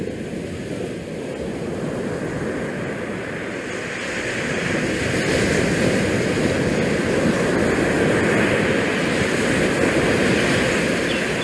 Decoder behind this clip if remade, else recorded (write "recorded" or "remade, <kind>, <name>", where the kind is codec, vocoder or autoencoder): recorded